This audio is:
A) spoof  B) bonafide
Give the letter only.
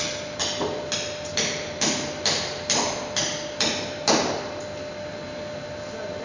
B